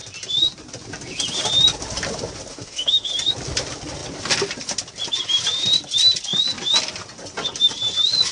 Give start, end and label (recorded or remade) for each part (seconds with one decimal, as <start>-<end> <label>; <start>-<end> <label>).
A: 0.0-2.5 recorded; 2.5-3.1 remade; 3.1-8.3 recorded